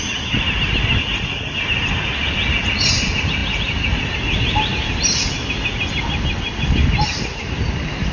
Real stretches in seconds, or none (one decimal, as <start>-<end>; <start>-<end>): 0.0-8.1